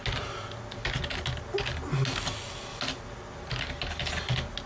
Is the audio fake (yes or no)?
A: no